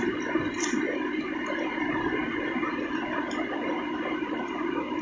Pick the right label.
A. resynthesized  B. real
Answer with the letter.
B